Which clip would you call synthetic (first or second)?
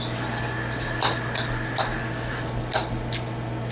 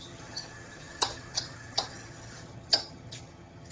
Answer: second